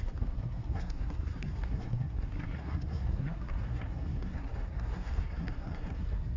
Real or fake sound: fake